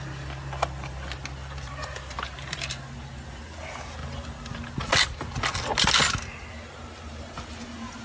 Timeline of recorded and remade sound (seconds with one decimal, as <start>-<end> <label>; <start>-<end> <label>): 0.0-1.4 recorded; 1.4-2.8 remade; 2.8-6.5 recorded; 6.5-7.3 remade; 7.3-8.0 recorded